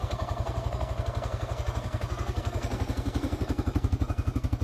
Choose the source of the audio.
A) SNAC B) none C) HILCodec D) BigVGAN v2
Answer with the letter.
A